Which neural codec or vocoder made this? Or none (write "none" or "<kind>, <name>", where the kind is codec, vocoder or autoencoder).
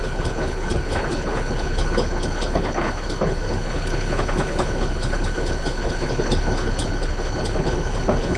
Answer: codec, HILCodec